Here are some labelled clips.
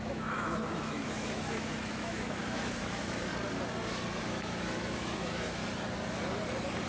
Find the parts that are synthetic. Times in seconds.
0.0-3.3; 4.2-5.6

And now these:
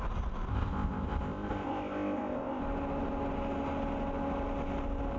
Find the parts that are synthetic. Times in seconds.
0.5-2.6